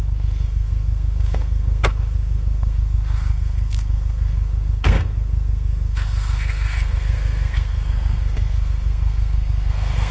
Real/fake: fake